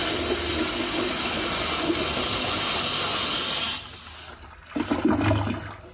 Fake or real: real